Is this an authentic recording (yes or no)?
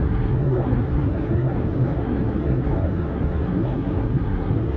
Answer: no